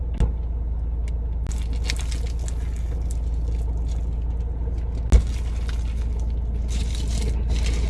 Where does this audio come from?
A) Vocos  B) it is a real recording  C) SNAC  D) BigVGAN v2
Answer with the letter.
B